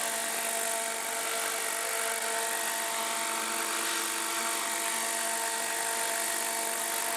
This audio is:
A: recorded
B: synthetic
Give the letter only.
A